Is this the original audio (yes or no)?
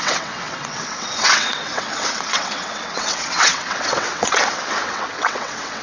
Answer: no